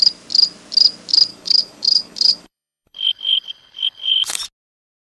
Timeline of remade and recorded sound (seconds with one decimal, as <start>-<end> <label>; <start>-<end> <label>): 0.0-1.3 recorded; 1.3-4.4 remade; 4.4-5.1 recorded